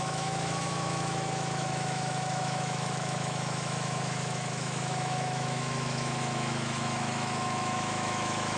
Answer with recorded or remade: remade